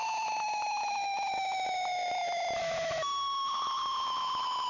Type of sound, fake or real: fake